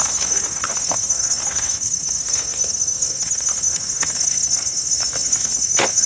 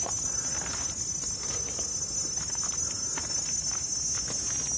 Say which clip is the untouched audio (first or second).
second